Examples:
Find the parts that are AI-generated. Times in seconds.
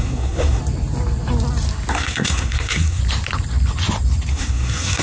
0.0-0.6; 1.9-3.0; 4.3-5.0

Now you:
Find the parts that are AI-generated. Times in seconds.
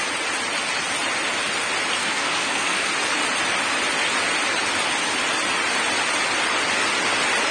2.0-2.9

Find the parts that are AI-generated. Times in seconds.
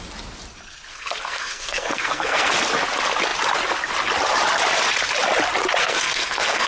0.9-2.5; 5.8-6.7